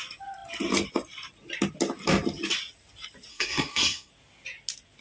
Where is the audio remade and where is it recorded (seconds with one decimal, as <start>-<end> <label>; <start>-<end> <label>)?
0.0-3.3 recorded; 3.3-4.1 remade; 4.1-5.0 recorded

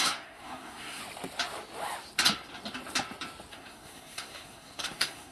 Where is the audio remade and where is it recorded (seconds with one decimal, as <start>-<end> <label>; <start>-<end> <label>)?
0.0-1.0 remade; 1.0-3.5 recorded; 3.5-5.3 remade

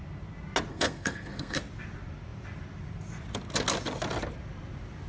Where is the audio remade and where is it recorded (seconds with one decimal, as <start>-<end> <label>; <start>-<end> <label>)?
0.0-0.7 recorded; 0.7-1.6 remade; 1.6-5.1 recorded

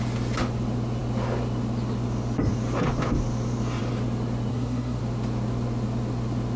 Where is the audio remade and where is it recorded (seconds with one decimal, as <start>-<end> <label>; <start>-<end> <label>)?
0.0-4.5 recorded; 4.5-5.0 remade; 5.0-6.6 recorded

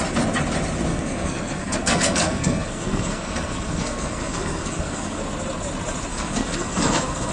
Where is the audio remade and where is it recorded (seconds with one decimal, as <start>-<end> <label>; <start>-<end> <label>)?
0.0-0.9 recorded; 0.9-5.2 remade; 5.2-6.1 recorded; 6.1-7.3 remade